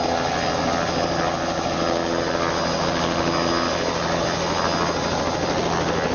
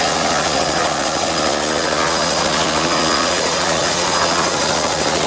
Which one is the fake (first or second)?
second